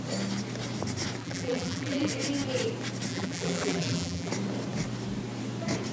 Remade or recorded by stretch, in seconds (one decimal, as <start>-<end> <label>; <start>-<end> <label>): 0.0-1.2 recorded; 1.2-2.1 remade; 2.1-3.1 recorded; 3.1-4.3 remade; 4.3-5.9 recorded